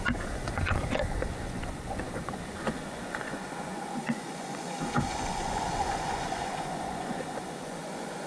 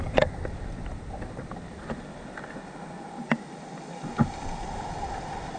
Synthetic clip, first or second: first